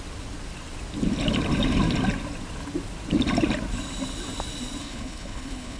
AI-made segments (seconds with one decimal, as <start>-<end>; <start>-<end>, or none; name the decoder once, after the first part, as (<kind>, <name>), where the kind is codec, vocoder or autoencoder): 4.8-5.8 (codec, HILCodec)